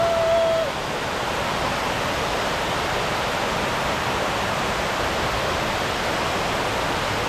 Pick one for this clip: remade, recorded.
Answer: recorded